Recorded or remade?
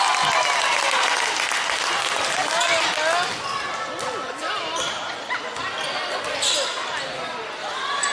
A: recorded